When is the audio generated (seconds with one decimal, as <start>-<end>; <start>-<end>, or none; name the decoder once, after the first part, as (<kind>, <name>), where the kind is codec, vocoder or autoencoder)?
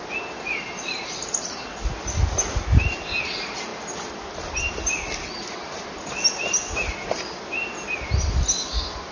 none